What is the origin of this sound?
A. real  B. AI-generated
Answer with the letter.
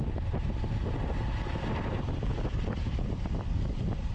A